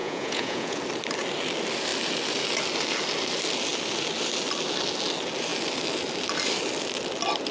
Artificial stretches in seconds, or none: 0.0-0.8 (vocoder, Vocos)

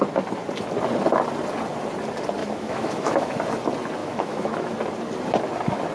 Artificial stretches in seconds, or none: 2.4-3.3 (autoencoder, DAC-VAE); 4.0-4.7

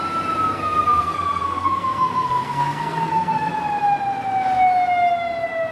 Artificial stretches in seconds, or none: 0.4-3.5 (codec, SNAC)

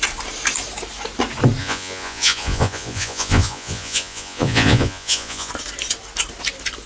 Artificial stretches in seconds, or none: 1.6-5.5 (vocoder, Vocos)

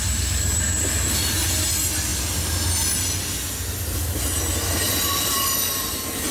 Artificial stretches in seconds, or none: none

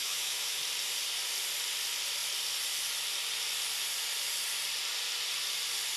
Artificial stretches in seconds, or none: 0.0-0.6 (autoencoder, DAC-VAE)